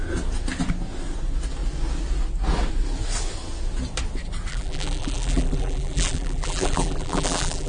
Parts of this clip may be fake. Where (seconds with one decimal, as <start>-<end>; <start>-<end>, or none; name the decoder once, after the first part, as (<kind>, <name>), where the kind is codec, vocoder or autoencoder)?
4.5-7.7 (vocoder, BigVGAN v2)